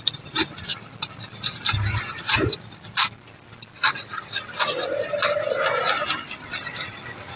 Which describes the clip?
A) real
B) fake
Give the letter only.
A